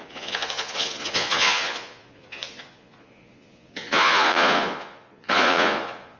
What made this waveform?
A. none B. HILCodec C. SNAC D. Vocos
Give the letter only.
D